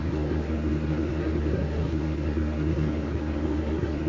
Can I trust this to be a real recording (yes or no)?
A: no